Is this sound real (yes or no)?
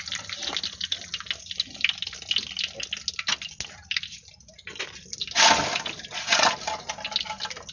yes